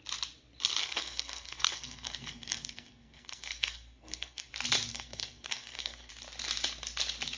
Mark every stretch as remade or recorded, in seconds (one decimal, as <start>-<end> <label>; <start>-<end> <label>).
0.0-0.8 recorded; 0.8-4.5 remade; 4.5-4.9 recorded; 4.9-6.1 remade; 6.1-7.4 recorded